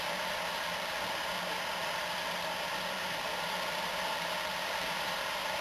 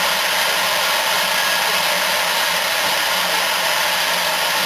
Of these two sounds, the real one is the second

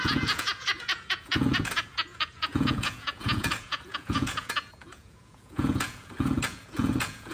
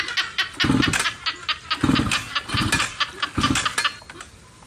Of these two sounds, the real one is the second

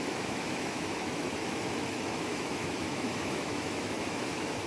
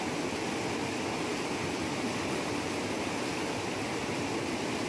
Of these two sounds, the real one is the second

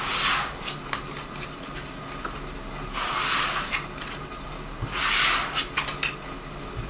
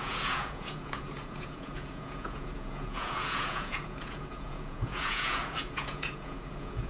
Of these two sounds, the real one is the first